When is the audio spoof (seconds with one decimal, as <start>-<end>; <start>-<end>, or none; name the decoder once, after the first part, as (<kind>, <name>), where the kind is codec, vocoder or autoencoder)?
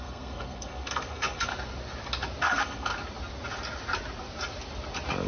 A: 0.0-1.5 (codec, SNAC); 2.4-2.9